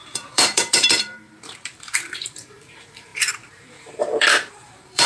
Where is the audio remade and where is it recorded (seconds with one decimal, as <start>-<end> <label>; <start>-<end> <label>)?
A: 0.0-5.1 remade